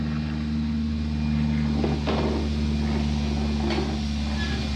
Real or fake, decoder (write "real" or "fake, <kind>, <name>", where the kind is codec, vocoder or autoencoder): real